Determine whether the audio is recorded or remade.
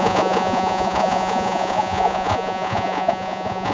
remade